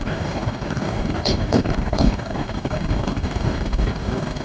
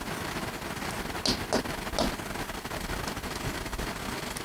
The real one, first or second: second